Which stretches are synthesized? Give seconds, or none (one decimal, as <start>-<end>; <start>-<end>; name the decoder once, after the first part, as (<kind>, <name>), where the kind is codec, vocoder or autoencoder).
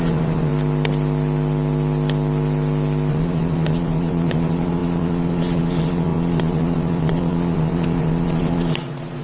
0.0-0.5 (vocoder, Vocos); 3.1-9.2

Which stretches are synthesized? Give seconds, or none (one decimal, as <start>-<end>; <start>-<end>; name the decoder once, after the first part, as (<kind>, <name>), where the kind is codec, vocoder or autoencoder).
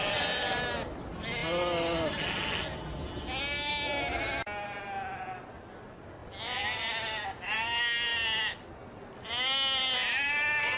none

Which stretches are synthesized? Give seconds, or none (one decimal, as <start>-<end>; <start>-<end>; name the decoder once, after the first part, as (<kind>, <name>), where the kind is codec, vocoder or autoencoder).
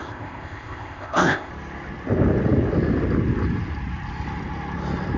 0.0-1.5 (codec, ZipCodec)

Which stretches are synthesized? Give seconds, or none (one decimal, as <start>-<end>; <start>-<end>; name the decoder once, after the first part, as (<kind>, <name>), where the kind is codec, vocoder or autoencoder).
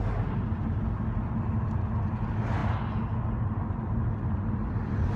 none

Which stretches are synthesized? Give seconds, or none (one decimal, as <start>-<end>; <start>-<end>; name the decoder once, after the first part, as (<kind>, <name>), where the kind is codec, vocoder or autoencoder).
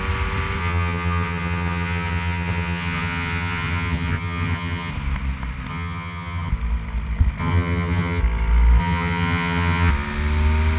0.6-4.9 (vocoder, HiFi-GAN); 5.7-6.5; 7.4-8.2; 8.8-9.9